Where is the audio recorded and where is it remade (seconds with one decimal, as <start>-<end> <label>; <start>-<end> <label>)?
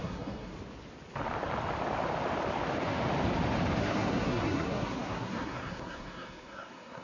0.0-0.5 remade; 0.5-3.8 recorded; 3.8-7.0 remade